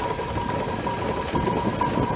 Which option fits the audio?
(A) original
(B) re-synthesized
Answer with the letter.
A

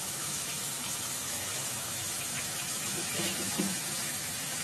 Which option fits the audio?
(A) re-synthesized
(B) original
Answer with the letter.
A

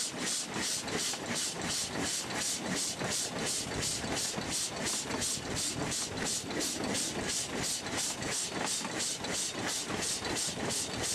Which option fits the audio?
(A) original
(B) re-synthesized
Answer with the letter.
A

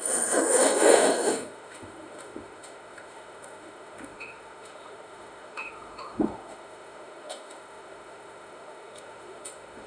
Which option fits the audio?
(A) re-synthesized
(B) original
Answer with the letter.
A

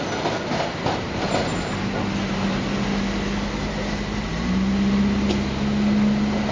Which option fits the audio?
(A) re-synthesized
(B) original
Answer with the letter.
B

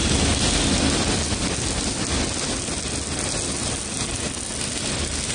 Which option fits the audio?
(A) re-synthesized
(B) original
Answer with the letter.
B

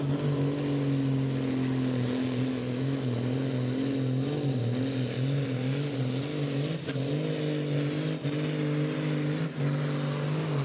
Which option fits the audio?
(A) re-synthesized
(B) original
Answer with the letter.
B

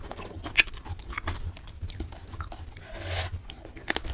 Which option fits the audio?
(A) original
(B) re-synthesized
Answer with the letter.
A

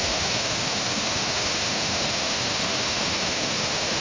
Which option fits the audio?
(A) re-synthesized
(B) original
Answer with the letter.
A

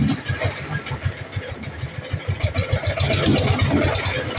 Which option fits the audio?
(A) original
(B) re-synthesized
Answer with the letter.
A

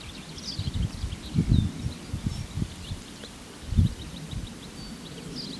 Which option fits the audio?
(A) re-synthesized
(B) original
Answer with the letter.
B